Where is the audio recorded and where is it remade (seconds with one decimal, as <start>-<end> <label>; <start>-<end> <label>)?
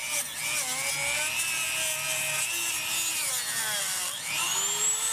0.0-5.1 recorded